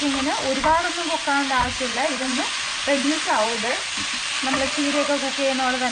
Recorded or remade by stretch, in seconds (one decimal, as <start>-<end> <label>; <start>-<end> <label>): 0.0-1.2 recorded; 1.2-3.7 remade; 3.7-5.9 recorded